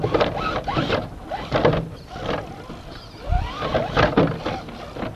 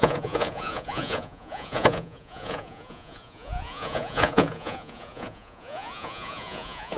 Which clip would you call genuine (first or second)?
first